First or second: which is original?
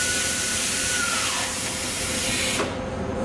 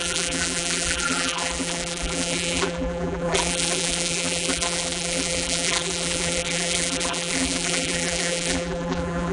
first